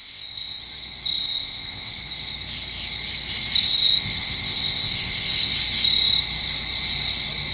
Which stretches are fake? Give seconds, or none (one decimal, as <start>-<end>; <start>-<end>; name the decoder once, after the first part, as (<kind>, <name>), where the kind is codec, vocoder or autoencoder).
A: 0.0-0.6 (codec, ZipCodec); 1.2-2.0; 3.6-5.5